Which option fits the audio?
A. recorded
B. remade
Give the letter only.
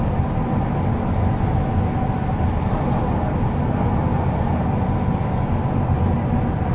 A